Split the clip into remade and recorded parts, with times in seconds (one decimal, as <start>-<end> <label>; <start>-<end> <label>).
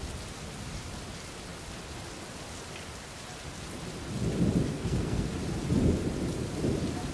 0.0-4.7 recorded; 4.7-5.3 remade; 5.3-7.1 recorded